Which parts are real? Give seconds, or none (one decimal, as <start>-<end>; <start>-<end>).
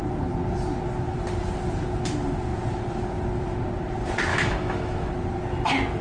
0.0-4.3; 5.1-6.0